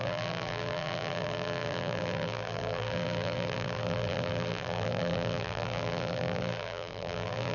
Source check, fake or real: fake